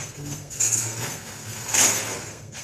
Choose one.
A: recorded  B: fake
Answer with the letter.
B